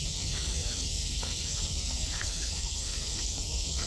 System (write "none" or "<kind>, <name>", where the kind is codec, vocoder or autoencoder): codec, SNAC